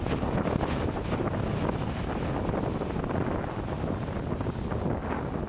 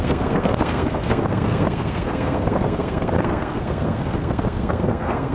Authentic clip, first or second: first